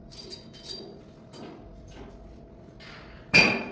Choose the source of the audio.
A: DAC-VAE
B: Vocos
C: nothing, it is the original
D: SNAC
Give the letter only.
C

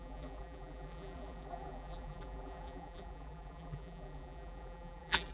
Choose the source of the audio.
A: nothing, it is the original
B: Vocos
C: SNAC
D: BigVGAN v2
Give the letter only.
D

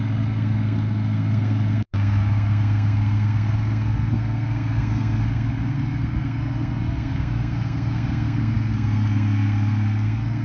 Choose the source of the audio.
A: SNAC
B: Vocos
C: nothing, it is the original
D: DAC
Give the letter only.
A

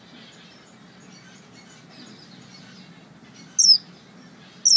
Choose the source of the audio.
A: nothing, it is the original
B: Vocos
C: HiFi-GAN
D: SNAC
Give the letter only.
A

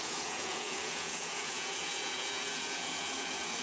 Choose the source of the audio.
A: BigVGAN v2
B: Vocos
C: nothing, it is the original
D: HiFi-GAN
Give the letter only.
B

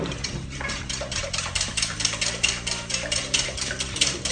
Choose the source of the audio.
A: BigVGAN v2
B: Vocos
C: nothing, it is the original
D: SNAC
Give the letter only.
A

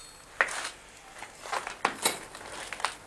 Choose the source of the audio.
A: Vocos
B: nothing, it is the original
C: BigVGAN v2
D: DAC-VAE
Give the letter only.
B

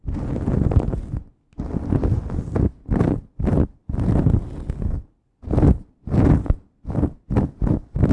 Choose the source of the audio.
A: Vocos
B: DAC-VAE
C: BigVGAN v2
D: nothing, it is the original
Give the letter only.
D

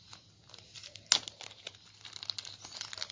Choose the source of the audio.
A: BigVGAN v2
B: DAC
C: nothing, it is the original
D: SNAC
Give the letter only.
C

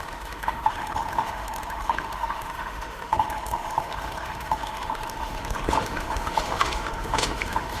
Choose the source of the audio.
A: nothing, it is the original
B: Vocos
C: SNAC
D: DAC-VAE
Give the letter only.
D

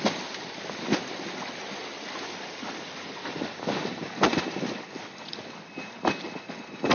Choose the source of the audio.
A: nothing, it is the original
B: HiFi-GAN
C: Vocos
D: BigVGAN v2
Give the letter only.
A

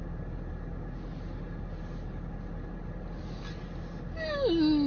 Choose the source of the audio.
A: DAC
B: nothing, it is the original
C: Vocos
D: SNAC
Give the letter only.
B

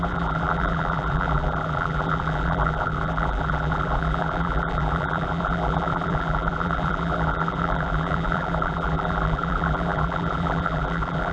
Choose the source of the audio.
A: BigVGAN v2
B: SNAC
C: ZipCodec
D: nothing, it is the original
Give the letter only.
A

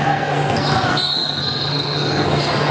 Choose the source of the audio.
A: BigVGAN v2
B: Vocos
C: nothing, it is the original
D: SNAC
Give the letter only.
D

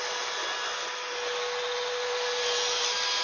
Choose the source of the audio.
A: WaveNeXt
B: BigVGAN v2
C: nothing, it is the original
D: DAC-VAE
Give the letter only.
C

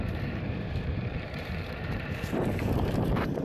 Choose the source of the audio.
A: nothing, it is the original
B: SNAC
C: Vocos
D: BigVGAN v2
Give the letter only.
D